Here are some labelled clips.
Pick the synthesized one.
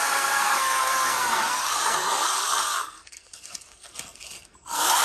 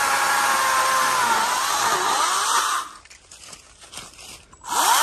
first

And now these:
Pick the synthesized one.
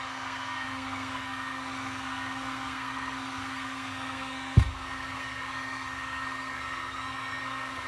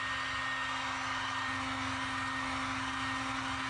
first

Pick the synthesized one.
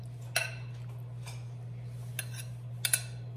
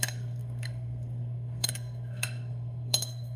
second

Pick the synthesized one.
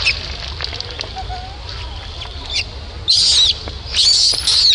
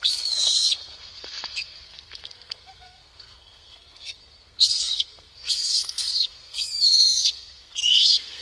second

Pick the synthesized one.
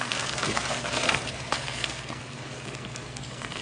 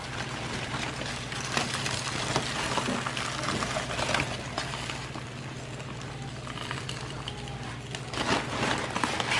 first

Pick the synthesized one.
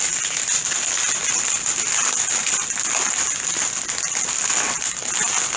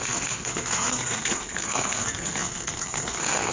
second